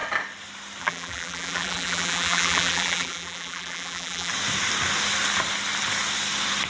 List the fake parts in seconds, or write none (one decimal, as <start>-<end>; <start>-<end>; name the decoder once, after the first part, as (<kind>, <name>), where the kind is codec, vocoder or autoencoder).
0.8-4.3 (vocoder, BigVGAN v2)